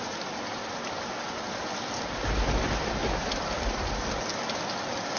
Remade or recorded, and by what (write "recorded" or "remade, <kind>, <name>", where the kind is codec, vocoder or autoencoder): recorded